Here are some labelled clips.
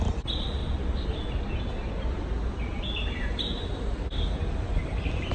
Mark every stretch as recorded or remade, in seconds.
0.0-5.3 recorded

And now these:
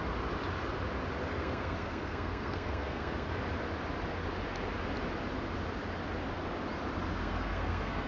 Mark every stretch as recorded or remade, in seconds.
0.0-1.3 recorded; 1.3-3.3 remade; 3.3-7.2 recorded; 7.2-8.1 remade

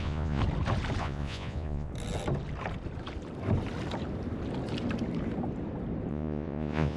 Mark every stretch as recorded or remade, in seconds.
0.0-0.4 remade; 0.4-1.0 recorded; 1.0-1.9 remade; 1.9-6.1 recorded; 6.1-7.0 remade

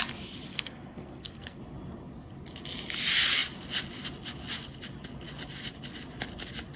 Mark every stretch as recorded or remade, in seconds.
0.0-0.5 recorded; 0.5-1.6 remade; 1.6-6.8 recorded

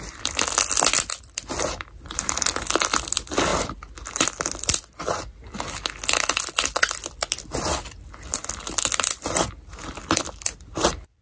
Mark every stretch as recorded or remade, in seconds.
0.0-11.2 recorded

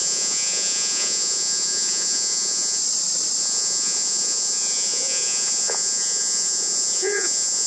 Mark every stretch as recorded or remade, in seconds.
0.0-2.8 remade; 2.8-3.4 recorded; 3.4-7.7 remade